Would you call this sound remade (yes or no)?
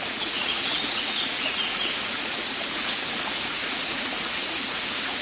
yes